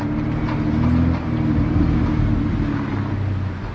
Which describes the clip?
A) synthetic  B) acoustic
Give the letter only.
B